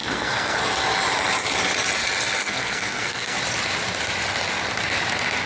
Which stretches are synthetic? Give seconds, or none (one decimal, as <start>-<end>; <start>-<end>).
0.0-0.6; 2.4-3.4